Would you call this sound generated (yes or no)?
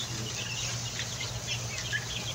no